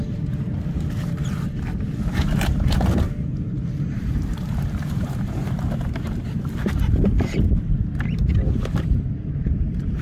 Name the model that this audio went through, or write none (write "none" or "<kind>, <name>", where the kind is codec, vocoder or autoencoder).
vocoder, BigVGAN v2